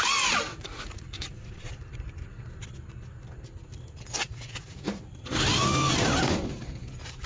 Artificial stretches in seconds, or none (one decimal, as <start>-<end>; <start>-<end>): 0.5-1.7; 4.2-5.0